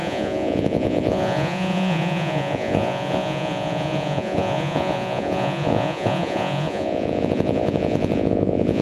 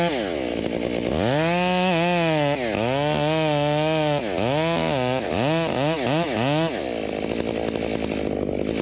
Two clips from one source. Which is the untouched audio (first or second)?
second